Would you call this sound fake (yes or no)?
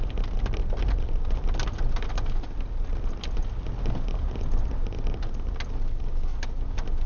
no